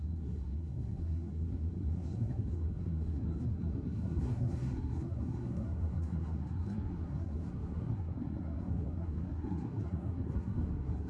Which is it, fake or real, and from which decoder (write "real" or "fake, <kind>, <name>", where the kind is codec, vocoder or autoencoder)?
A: fake, codec, SNAC